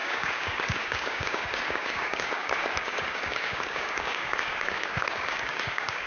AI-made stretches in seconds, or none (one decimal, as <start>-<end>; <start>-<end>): 0.0-6.1